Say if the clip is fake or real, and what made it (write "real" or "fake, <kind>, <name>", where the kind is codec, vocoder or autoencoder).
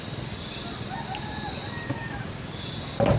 real